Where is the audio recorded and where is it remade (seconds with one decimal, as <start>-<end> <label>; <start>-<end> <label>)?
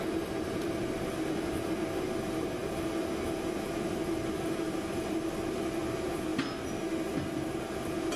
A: 0.0-2.6 remade; 2.6-3.8 recorded; 3.8-6.3 remade; 6.3-7.3 recorded; 7.3-8.2 remade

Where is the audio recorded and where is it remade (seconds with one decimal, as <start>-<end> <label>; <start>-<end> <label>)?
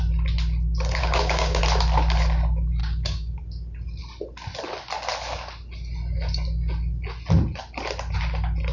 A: 0.0-1.0 recorded; 1.0-1.6 remade; 1.6-2.8 recorded; 2.8-3.4 remade; 3.4-8.7 recorded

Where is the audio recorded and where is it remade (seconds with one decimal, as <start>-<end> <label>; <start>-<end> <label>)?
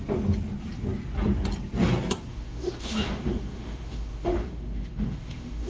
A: 0.0-2.3 recorded; 2.3-5.7 remade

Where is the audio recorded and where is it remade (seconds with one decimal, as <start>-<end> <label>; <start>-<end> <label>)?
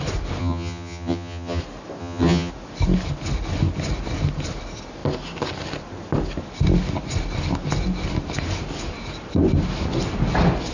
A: 0.0-0.4 recorded; 0.4-1.6 remade; 1.6-2.0 recorded; 2.0-2.5 remade; 2.5-10.7 recorded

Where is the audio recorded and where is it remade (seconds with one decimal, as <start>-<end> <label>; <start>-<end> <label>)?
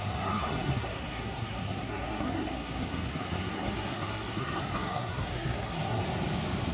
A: 0.0-6.0 remade; 6.0-6.7 recorded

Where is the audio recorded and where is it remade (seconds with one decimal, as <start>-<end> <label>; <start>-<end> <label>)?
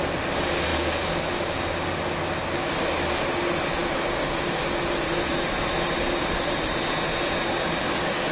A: 0.0-8.3 recorded